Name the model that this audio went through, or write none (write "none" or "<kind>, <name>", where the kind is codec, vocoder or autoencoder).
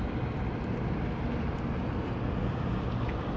none